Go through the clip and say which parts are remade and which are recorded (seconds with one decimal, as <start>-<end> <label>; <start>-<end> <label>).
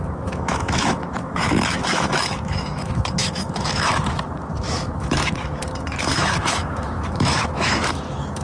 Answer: 0.0-8.4 remade